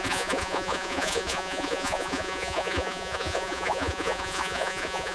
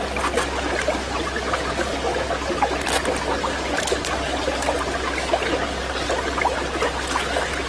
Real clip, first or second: second